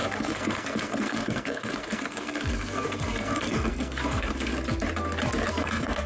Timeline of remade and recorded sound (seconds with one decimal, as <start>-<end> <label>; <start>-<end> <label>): 0.0-4.5 remade; 4.5-5.5 recorded; 5.5-6.1 remade